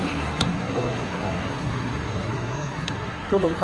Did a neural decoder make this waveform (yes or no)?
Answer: yes